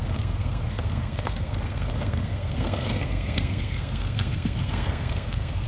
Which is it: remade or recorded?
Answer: remade